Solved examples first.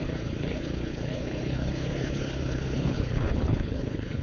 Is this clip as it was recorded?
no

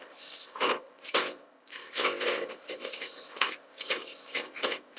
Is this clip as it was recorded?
no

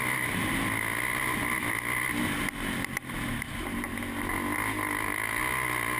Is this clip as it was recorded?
yes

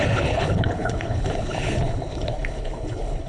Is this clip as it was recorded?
no